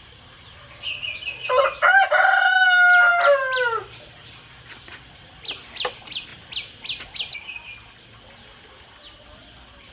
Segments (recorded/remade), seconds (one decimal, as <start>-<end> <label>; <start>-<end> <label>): 0.0-9.9 recorded